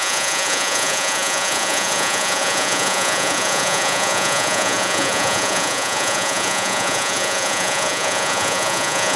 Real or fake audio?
fake